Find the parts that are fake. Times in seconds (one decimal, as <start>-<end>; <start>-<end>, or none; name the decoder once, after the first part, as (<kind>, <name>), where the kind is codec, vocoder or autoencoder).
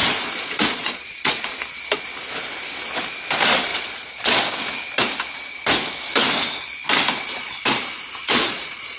0.0-1.5 (vocoder, Vocos); 3.7-4.4; 8.2-9.0